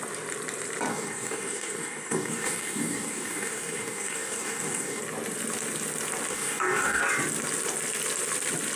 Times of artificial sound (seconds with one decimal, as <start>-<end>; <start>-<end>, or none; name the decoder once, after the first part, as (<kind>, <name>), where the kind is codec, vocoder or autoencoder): 0.9-5.0 (codec, DAC); 6.3-7.0